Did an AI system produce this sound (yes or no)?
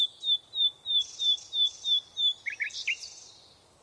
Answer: no